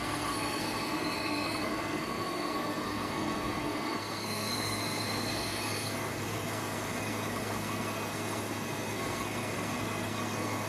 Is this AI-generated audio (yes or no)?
yes